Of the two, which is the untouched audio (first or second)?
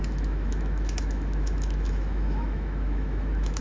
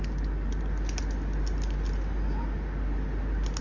second